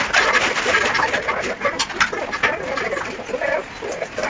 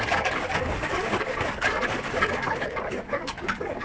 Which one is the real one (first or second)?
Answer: first